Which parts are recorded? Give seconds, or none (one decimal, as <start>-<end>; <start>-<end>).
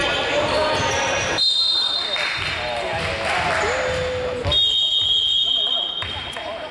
0.0-6.7